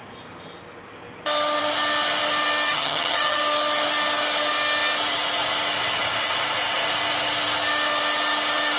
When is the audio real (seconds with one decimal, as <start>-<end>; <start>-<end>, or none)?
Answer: 0.0-2.7; 3.4-8.8